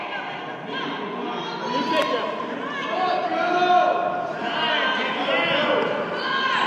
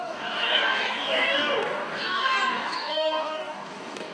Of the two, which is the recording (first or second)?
first